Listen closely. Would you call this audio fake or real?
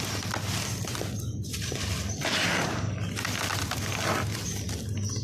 real